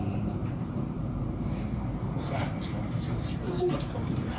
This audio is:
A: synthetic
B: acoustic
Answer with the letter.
A